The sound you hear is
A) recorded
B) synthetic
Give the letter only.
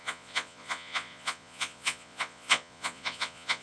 B